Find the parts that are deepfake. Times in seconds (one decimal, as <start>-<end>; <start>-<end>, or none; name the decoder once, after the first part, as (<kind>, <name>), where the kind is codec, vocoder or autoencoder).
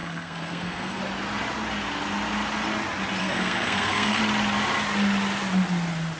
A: 0.0-1.0 (codec, SNAC); 3.2-4.2